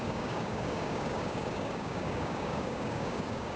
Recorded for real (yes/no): no